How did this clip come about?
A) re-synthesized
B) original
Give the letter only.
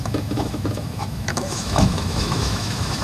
A